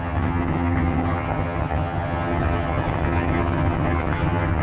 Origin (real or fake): fake